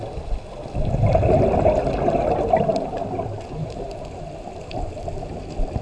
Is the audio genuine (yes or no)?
yes